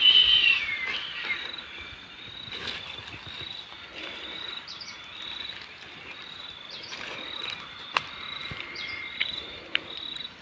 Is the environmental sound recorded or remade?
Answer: recorded